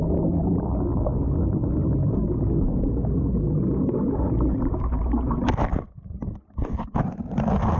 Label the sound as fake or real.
real